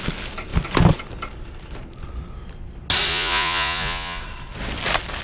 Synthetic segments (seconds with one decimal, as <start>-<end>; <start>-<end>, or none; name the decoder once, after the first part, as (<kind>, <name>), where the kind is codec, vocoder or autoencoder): 3.1-4.2 (vocoder, Vocos)